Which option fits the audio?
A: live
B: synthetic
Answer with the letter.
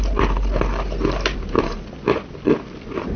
A